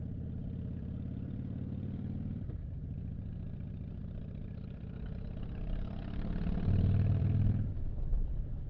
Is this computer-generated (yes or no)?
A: yes